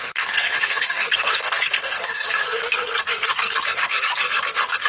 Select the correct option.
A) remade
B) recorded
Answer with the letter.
A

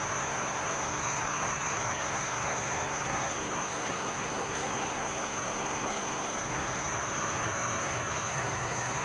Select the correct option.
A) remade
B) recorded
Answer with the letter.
A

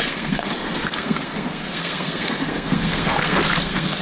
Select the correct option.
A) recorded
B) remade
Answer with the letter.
B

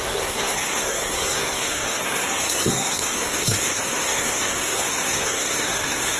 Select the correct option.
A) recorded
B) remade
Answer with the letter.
B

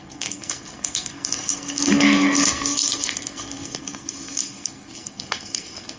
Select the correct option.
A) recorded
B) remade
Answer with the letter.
B